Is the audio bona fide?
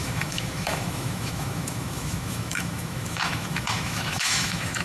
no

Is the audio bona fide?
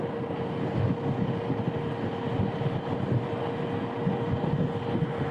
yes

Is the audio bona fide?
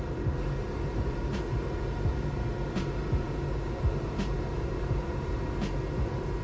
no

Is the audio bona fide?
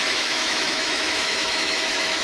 no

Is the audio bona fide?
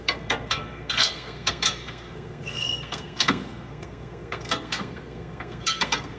no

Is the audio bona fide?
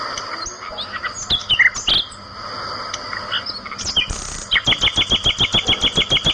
yes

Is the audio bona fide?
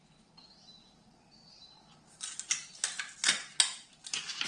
yes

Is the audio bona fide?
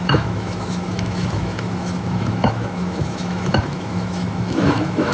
no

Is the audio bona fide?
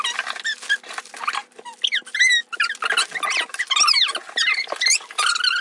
yes